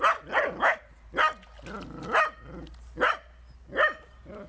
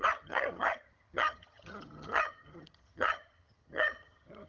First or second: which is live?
first